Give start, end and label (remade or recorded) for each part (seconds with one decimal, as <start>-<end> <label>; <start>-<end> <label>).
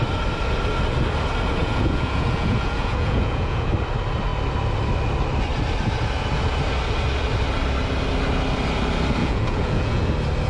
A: 0.0-1.6 recorded; 1.6-3.7 remade; 3.7-9.2 recorded; 9.2-10.1 remade; 10.1-10.5 recorded